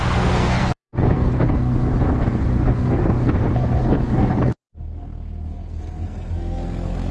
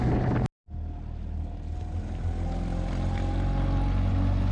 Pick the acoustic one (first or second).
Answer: second